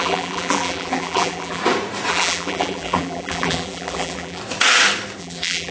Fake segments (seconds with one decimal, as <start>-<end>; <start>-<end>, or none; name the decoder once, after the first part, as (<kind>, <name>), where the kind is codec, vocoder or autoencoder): 0.0-1.6 (vocoder, BigVGAN v2); 2.1-4.4; 5.2-5.7